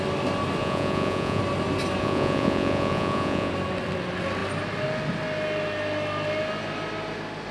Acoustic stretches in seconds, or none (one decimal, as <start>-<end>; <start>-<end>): 0.0-0.6; 1.4-2.0; 3.5-7.5